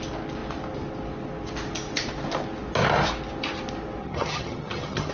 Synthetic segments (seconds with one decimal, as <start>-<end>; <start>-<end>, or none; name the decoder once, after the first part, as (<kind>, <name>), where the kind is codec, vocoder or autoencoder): 4.0-5.1 (vocoder, HiFi-GAN)